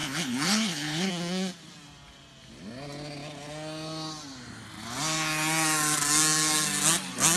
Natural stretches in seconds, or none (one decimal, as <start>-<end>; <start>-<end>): 1.1-7.4